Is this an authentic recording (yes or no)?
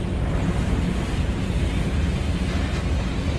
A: yes